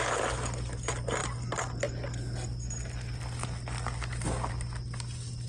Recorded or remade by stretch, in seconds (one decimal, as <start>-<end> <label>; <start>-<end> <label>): 0.0-5.5 recorded